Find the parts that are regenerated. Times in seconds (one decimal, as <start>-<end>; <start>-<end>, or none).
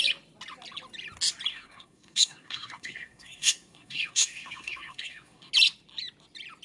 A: 1.5-5.5